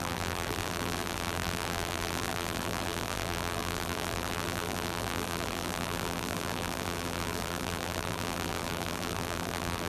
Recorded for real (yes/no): no